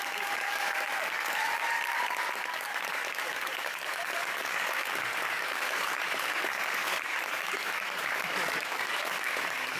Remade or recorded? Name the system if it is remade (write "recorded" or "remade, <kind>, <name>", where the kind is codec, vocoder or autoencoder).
remade, codec, DAC